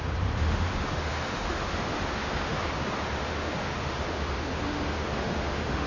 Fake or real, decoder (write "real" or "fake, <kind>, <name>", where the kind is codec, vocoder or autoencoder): fake, autoencoder, DAC-VAE